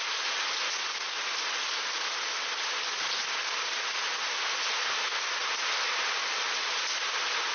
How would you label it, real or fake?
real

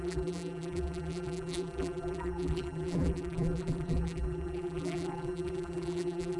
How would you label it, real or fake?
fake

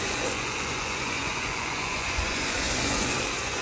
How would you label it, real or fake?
fake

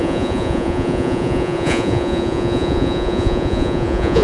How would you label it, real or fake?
fake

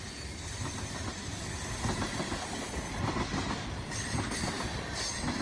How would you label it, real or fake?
real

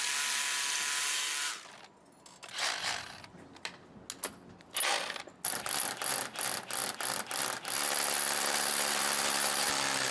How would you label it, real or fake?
real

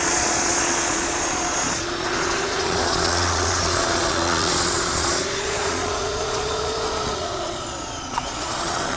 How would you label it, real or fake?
fake